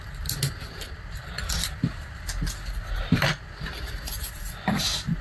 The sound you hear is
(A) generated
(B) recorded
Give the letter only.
B